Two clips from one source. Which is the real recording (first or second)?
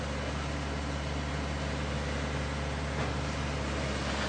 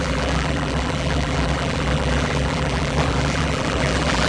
first